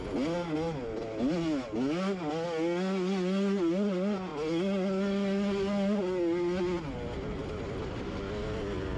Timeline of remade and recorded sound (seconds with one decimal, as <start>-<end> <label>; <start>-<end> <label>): 0.0-9.0 recorded